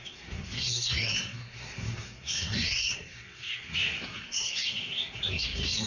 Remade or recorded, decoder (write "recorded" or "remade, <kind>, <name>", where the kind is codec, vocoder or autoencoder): remade, codec, SNAC